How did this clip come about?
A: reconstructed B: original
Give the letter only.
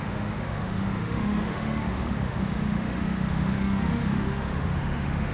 A